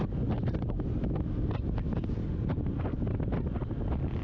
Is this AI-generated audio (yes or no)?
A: no